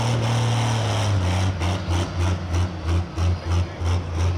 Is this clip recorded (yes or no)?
yes